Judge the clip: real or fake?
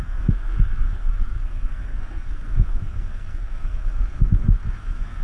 fake